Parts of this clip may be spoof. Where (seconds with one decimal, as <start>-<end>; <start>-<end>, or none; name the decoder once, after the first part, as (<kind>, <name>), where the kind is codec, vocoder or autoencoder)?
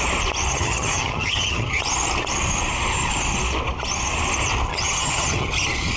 0.5-1.8 (vocoder, HiFi-GAN); 4.7-5.5